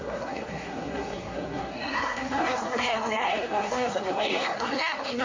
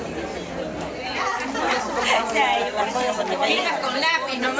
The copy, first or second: first